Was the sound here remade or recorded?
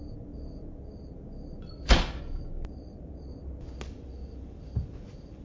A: recorded